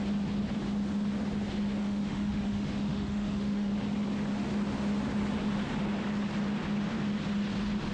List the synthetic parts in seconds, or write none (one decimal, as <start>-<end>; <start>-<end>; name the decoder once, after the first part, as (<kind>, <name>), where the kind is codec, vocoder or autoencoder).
1.8-3.7 (autoencoder, DAC-VAE)